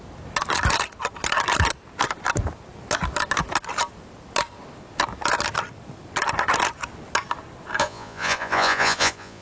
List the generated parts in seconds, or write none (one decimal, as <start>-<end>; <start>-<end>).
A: 7.8-9.4